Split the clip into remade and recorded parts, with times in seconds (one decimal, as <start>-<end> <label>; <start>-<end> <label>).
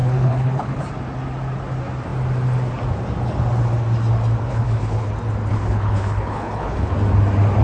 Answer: 0.0-0.8 remade; 0.8-4.5 recorded; 4.5-5.1 remade; 5.1-5.5 recorded; 5.5-6.9 remade; 6.9-7.6 recorded